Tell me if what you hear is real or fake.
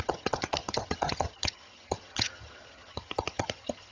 fake